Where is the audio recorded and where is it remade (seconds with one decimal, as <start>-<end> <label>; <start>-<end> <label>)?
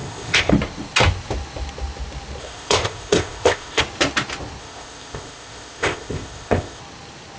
0.0-0.5 remade; 0.5-2.4 recorded; 2.4-3.8 remade; 3.8-4.6 recorded; 4.6-6.8 remade; 6.8-7.4 recorded